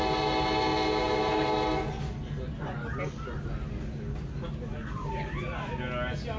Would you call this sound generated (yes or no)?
no